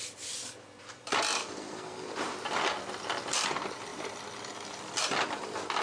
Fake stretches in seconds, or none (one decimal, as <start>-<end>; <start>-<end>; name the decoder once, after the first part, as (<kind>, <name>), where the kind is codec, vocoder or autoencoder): 1.4-2.1 (codec, SNAC)